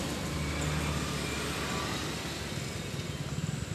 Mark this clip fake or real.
real